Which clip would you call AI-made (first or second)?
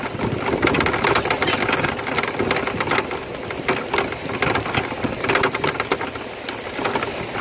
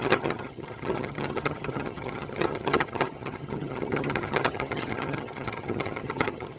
second